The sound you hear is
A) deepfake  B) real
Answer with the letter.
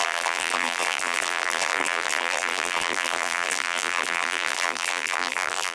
A